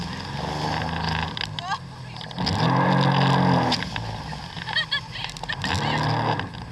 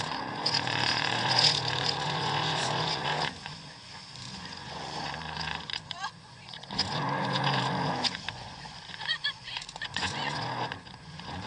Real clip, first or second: first